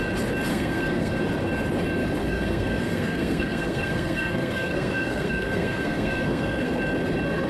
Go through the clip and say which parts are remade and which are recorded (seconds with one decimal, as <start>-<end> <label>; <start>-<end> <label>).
0.0-0.5 recorded; 0.5-1.2 remade; 1.2-2.2 recorded; 2.2-6.7 remade; 6.7-7.5 recorded